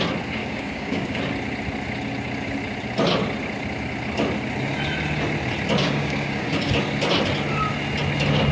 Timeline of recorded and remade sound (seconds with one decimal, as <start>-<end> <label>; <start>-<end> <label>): 0.0-0.4 recorded; 0.4-1.2 remade; 1.2-5.8 recorded; 5.8-6.7 remade; 6.7-8.5 recorded